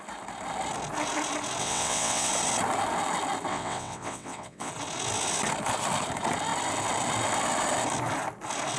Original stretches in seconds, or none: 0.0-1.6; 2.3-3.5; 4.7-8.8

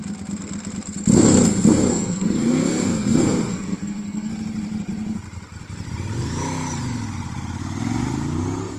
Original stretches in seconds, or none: 0.0-1.9; 4.3-8.8

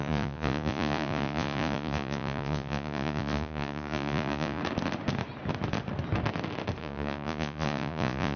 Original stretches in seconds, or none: 4.6-6.8

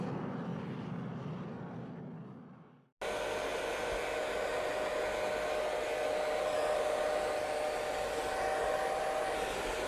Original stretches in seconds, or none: 0.0-9.9

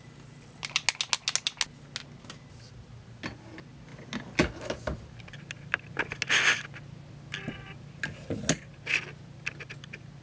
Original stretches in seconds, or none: 0.0-10.2

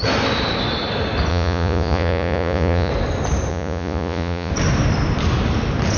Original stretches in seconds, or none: 0.0-1.3; 2.9-3.5; 4.5-6.0

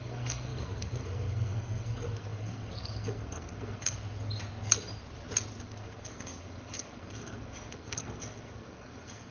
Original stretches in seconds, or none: 4.0-5.6